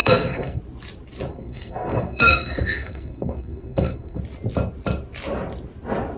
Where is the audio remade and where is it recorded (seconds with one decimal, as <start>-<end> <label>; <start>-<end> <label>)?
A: 0.0-0.6 remade; 0.6-1.3 recorded; 1.3-4.2 remade; 4.2-6.2 recorded